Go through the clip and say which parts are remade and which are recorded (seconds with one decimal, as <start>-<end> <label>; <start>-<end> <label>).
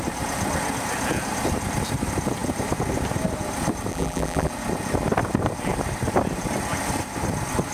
0.0-3.9 recorded; 3.9-4.5 remade; 4.5-7.7 recorded